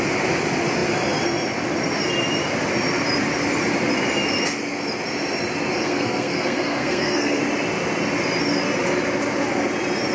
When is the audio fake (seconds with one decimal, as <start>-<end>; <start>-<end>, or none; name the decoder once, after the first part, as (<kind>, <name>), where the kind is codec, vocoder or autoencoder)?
5.8-7.4 (codec, SNAC)